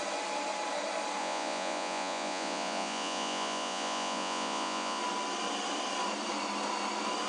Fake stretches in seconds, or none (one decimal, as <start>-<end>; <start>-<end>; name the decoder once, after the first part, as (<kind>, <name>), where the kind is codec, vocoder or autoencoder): 1.2-5.0 (vocoder, Vocos)